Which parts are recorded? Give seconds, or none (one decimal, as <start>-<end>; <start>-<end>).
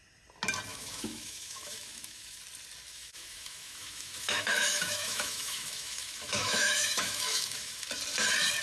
0.0-0.7; 2.4-2.9; 7.9-8.6